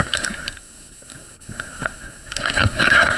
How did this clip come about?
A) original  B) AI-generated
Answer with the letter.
B